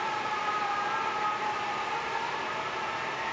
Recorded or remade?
recorded